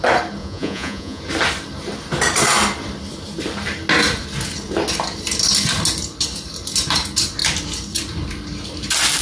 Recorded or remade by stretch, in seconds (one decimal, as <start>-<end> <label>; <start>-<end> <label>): 0.0-0.4 recorded; 0.4-1.2 remade; 1.2-9.2 recorded